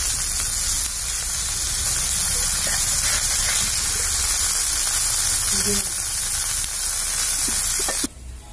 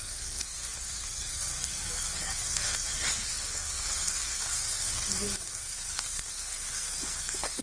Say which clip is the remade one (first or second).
second